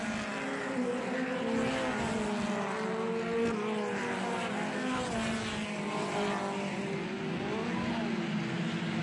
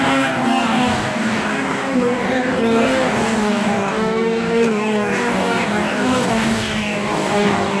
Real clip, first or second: first